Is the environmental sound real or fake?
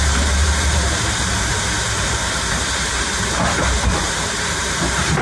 fake